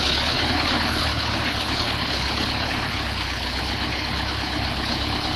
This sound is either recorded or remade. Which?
remade